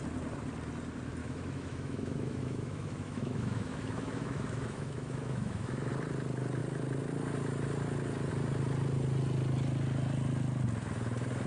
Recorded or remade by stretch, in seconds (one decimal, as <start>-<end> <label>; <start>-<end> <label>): 0.0-1.2 recorded; 1.2-5.9 remade; 5.9-11.5 recorded